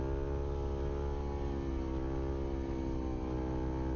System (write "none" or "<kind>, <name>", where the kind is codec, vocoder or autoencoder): none